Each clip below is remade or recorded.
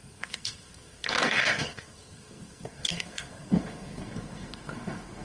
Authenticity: remade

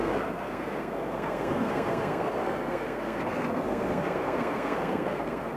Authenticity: remade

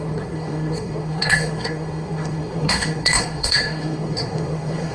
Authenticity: remade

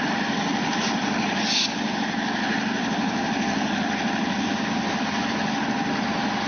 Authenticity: recorded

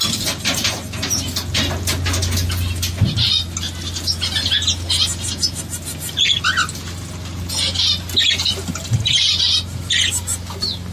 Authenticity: recorded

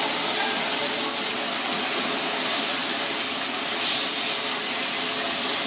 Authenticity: recorded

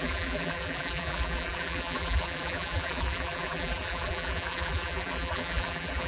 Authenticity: remade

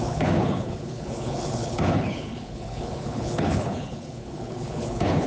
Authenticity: remade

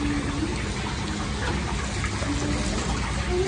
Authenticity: recorded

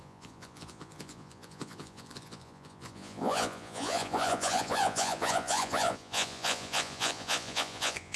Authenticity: remade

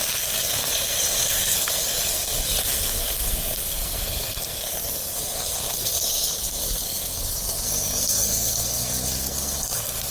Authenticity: remade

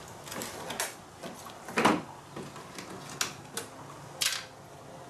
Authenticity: recorded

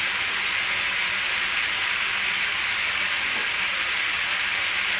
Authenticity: recorded